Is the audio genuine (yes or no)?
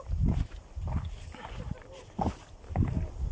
yes